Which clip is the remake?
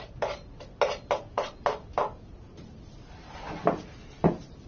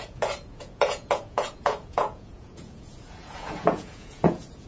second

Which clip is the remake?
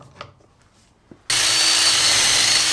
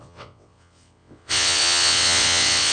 second